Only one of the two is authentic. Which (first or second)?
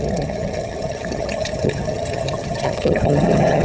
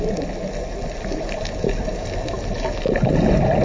second